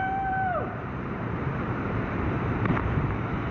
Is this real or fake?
fake